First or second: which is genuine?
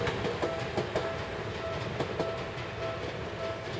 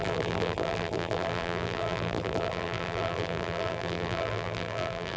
first